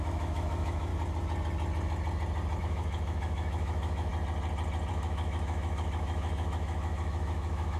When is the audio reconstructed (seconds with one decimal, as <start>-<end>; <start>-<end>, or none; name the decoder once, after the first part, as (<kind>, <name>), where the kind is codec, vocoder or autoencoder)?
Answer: 0.0-0.9 (autoencoder, DAC-VAE); 2.6-4.1; 4.9-7.8